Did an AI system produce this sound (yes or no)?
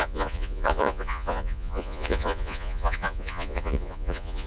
yes